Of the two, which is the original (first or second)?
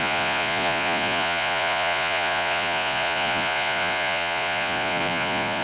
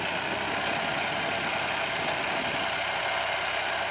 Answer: second